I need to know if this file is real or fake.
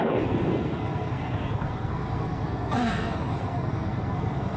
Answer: fake